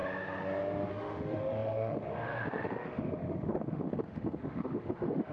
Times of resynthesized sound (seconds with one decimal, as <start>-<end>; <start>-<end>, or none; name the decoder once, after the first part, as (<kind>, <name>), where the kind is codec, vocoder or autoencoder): 0.9-5.3 (autoencoder, DAC-VAE)